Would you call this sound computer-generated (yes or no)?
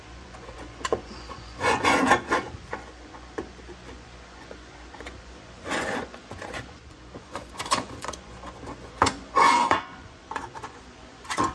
yes